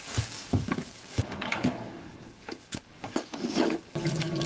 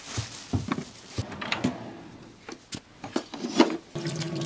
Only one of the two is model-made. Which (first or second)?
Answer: first